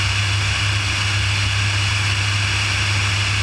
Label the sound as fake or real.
real